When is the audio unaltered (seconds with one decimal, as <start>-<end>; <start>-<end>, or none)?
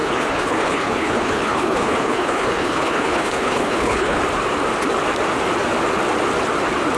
4.2-7.0